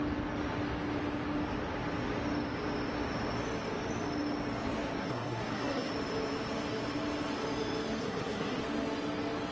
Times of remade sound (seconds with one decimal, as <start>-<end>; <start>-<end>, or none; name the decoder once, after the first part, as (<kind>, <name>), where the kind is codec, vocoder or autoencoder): 5.0-5.9 (codec, SNAC); 8.0-8.6